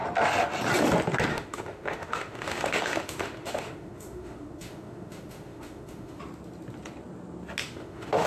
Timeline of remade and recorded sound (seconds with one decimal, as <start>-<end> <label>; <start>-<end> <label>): 0.0-1.3 recorded; 1.3-6.2 remade; 6.2-7.6 recorded; 7.6-8.3 remade